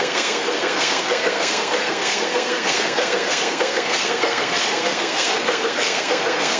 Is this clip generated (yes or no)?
yes